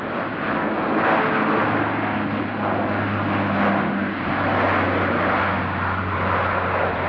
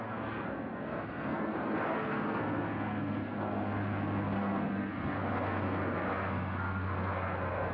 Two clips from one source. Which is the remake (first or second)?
second